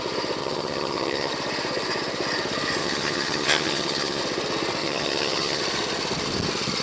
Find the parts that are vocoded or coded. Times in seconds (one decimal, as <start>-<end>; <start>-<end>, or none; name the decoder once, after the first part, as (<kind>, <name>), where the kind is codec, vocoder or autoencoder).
0.4-1.3 (vocoder, HiFi-GAN); 2.8-4.2; 4.8-5.6